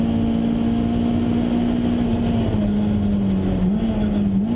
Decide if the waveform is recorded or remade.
recorded